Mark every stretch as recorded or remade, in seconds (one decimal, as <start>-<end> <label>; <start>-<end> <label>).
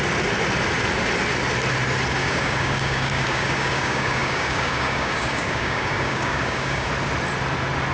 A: 0.0-2.2 recorded; 2.2-6.9 remade; 6.9-7.9 recorded